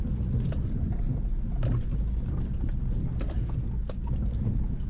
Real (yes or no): yes